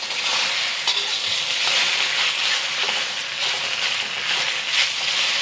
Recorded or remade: recorded